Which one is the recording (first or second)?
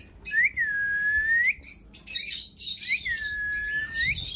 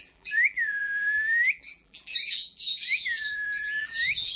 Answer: first